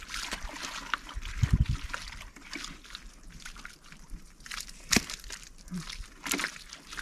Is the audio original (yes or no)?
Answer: yes